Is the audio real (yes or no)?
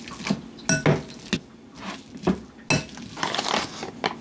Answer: yes